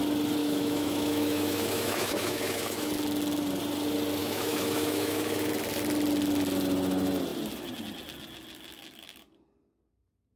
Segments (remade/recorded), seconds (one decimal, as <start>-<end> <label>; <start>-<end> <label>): 0.0-0.4 recorded; 0.4-2.9 remade; 2.9-4.2 recorded; 4.2-5.5 remade; 5.5-10.4 recorded